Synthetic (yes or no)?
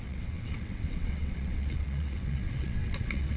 yes